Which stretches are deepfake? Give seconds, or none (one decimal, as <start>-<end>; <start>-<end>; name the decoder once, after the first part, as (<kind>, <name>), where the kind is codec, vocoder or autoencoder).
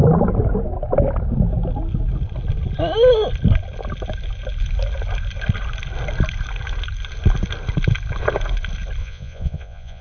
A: 9.0-10.0 (vocoder, Vocos)